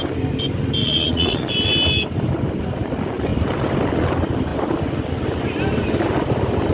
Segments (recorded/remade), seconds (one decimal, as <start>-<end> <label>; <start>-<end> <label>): 0.0-0.8 recorded; 0.8-1.5 remade; 1.5-6.7 recorded